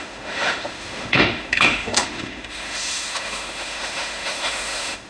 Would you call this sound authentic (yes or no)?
no